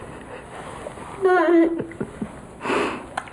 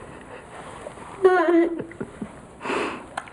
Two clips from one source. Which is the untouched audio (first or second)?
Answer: first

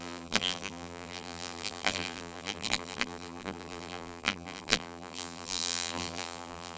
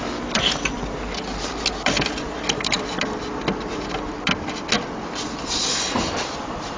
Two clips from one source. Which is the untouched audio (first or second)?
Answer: second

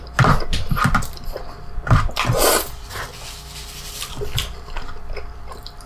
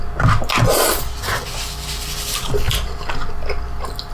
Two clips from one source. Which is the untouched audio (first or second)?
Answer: second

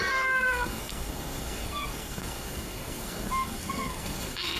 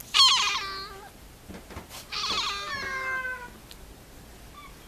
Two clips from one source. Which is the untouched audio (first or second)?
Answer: second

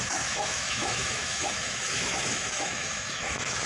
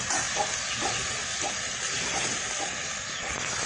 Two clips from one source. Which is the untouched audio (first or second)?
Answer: second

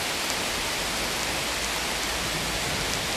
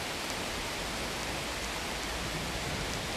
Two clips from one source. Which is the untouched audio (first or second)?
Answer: first